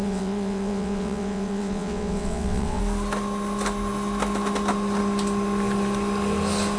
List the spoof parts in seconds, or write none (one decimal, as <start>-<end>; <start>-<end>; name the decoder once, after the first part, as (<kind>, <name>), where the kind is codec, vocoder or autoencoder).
0.0-2.8 (vocoder, WaveNeXt)